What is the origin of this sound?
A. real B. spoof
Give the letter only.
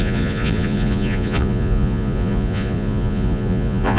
B